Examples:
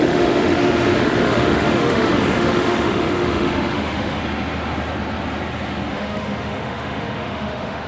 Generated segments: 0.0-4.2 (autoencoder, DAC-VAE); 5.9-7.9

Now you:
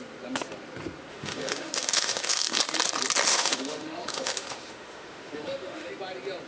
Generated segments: 1.1-2.6 (autoencoder, DAC-VAE); 3.3-5.9

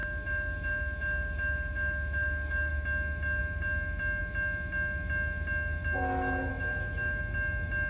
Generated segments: 0.0-2.7 (autoencoder, DAC-VAE); 6.5-7.2

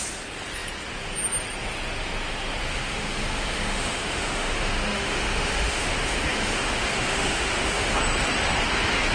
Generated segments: 2.7-8.0 (autoencoder, DAC-VAE)